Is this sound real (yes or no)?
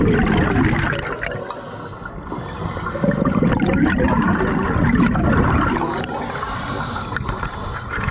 yes